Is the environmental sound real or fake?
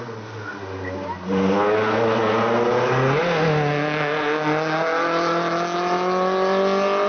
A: real